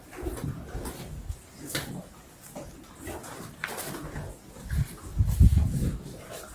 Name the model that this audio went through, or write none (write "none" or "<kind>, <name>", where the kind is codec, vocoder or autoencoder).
none